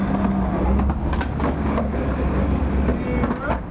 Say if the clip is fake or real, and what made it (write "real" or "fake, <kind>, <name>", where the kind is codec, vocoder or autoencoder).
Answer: real